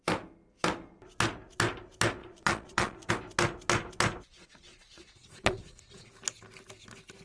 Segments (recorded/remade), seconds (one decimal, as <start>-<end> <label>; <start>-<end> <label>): 0.0-2.2 recorded; 2.2-3.1 remade; 3.1-4.3 recorded; 4.3-6.1 remade; 6.1-7.2 recorded